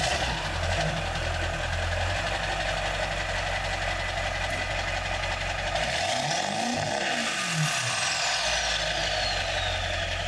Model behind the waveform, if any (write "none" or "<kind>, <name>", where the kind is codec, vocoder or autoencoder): none